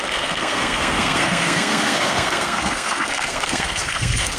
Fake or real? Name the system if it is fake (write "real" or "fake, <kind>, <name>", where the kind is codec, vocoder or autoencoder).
fake, codec, SNAC